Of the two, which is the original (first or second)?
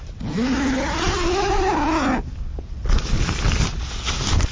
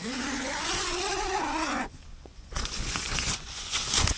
first